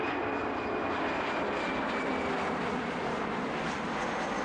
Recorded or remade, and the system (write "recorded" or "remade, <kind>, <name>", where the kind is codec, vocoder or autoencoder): recorded